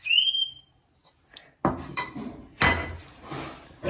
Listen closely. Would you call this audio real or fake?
real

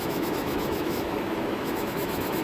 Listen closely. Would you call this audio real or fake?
fake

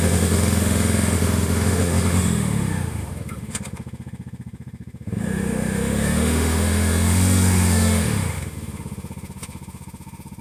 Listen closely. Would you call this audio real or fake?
fake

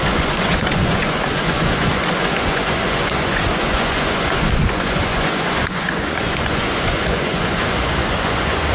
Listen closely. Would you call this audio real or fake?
fake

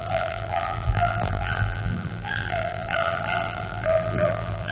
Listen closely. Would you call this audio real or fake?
fake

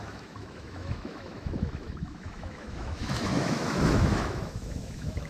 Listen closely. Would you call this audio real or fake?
fake